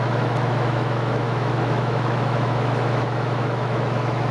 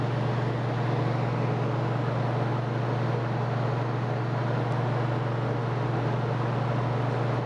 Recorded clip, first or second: second